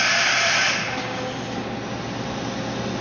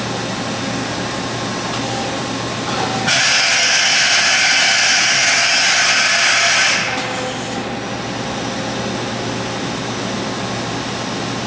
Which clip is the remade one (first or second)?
first